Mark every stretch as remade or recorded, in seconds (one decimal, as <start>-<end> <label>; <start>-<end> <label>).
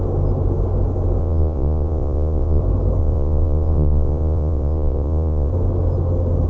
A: 0.0-1.2 recorded; 1.2-2.6 remade; 2.6-3.0 recorded; 3.0-5.5 remade; 5.5-6.5 recorded